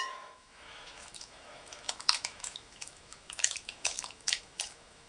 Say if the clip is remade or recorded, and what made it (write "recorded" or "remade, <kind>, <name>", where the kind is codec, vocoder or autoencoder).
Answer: remade, autoencoder, DAC-VAE